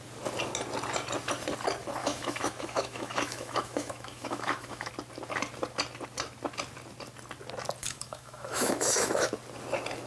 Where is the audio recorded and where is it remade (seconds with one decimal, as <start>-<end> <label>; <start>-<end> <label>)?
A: 0.0-2.0 recorded; 2.0-4.9 remade; 4.9-7.8 recorded; 7.8-9.3 remade; 9.3-10.1 recorded